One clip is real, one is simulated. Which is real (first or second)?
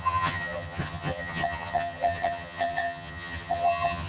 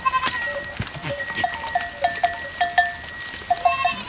second